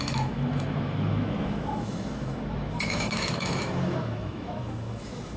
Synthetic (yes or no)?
yes